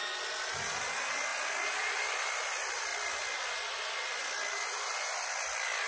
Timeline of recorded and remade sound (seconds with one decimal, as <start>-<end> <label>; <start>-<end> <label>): 0.0-5.9 recorded